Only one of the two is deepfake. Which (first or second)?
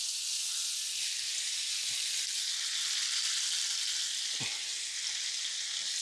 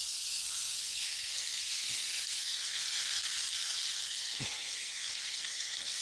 second